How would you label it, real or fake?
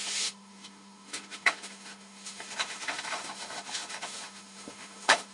fake